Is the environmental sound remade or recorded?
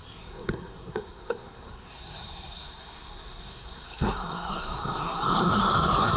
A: remade